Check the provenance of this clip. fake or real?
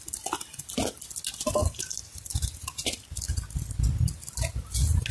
real